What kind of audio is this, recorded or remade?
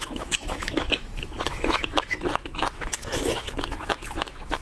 remade